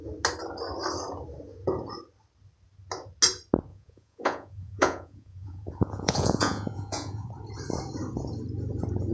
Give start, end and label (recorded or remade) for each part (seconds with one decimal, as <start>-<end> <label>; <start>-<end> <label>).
0.0-3.7 recorded; 3.7-7.3 remade; 7.3-9.1 recorded